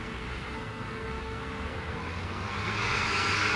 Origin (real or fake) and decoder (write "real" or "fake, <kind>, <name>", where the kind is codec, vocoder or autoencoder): fake, codec, SNAC